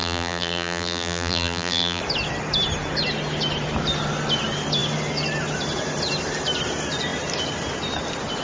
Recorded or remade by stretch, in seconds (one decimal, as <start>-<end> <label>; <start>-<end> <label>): 0.0-2.0 remade; 2.0-8.4 recorded